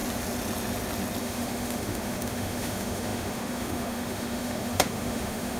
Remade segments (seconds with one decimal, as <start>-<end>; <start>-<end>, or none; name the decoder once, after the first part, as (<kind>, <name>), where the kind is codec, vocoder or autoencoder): 1.2-5.6 (autoencoder, DAC-VAE)